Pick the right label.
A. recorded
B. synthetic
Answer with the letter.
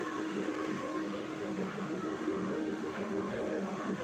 B